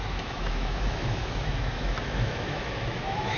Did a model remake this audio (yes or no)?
yes